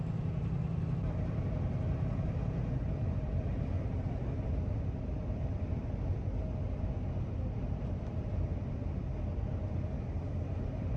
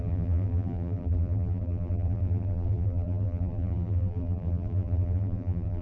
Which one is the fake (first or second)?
second